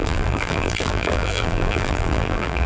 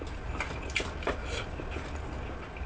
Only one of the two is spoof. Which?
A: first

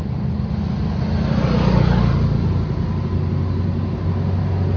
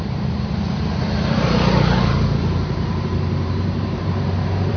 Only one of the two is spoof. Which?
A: second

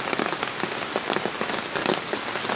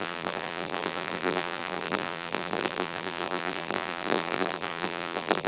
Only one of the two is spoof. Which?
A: second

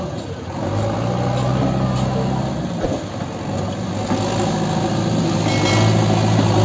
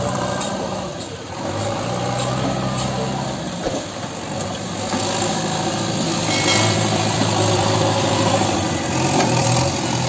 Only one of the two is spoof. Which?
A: second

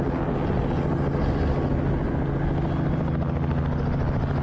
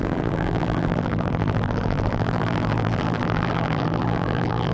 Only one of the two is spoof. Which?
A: second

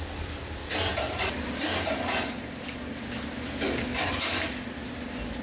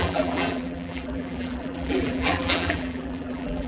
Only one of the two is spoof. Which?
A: second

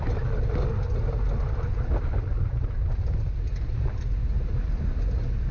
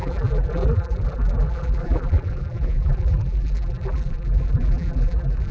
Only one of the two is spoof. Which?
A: second